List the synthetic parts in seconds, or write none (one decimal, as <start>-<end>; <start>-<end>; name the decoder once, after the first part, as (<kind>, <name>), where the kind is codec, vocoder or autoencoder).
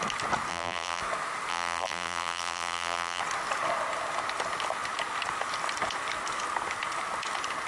0.5-1.0 (vocoder, BigVGAN v2); 1.5-3.2